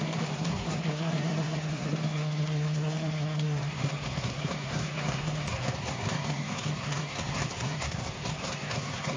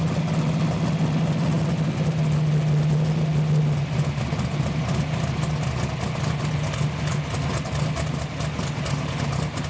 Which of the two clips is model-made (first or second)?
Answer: first